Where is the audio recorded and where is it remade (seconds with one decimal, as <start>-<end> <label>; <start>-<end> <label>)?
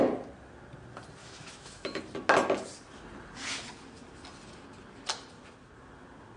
0.0-1.2 recorded; 1.2-2.0 remade; 2.0-6.4 recorded